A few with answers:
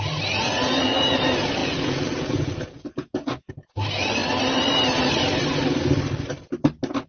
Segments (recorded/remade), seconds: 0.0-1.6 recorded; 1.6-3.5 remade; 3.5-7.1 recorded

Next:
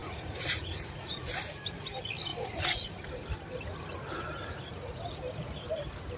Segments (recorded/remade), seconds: 0.0-1.4 remade; 1.4-2.3 recorded; 2.3-3.1 remade; 3.1-4.7 recorded; 4.7-5.2 remade; 5.2-6.2 recorded

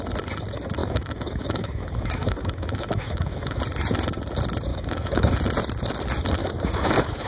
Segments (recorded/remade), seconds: 0.0-0.8 recorded; 0.8-3.6 remade; 3.6-4.7 recorded; 4.7-5.3 remade; 5.3-6.4 recorded; 6.4-7.3 remade

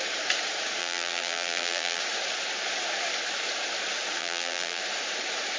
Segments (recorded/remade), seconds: 0.0-0.8 recorded; 0.8-2.0 remade; 2.0-4.2 recorded; 4.2-4.8 remade; 4.8-5.6 recorded

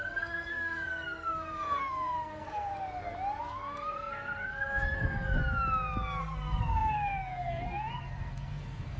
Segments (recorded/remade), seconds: 0.0-2.7 remade; 2.7-3.4 recorded; 3.4-5.4 remade; 5.4-6.2 recorded; 6.2-9.0 remade

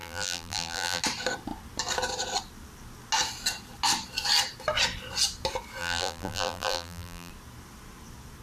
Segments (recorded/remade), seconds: 0.0-1.0 remade; 1.0-5.8 recorded; 5.8-7.3 remade; 7.3-8.4 recorded

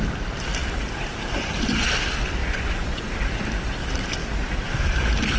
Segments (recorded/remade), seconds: 0.0-2.4 recorded; 2.4-3.1 remade; 3.1-5.4 recorded